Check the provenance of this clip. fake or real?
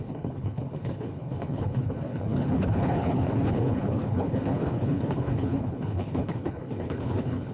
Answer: fake